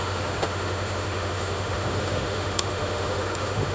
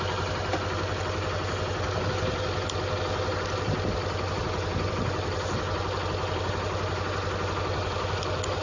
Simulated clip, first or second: first